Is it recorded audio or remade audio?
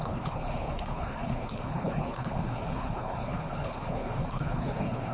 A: remade